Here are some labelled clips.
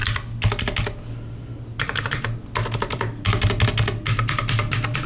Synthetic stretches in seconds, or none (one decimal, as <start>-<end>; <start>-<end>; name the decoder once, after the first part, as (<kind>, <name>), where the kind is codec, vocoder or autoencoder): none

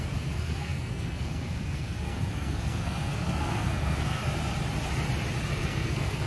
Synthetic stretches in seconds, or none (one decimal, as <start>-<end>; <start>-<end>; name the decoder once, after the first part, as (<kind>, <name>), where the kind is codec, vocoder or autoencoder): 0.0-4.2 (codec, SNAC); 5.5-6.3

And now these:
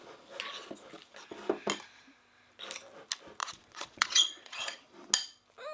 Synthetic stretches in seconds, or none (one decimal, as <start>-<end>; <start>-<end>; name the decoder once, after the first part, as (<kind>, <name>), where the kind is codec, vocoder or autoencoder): 3.4-5.1 (vocoder, Vocos)